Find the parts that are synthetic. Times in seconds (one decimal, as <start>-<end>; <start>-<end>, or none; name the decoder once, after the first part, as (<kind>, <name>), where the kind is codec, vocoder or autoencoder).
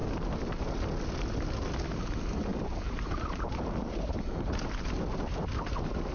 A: none